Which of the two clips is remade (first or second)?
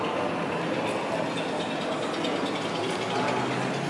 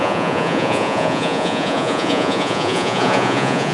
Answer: second